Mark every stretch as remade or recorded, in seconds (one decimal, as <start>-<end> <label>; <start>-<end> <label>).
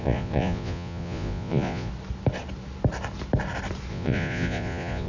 0.0-1.9 remade; 1.9-3.9 recorded; 3.9-5.1 remade